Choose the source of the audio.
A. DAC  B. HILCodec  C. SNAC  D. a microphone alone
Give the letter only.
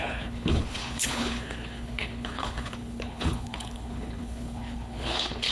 B